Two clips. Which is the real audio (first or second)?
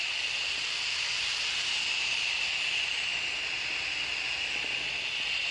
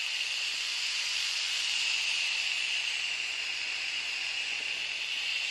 first